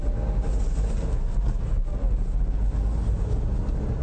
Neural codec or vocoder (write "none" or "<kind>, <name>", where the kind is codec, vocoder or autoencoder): none